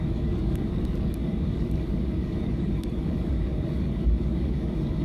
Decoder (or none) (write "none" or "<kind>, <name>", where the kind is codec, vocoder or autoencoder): codec, DAC